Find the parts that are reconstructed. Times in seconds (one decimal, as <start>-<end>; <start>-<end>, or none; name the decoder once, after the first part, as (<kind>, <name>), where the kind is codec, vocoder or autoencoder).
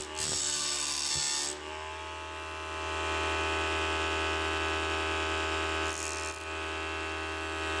0.4-1.1 (codec, SNAC)